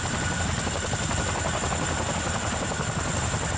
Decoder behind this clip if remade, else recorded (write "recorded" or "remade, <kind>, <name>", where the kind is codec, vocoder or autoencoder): recorded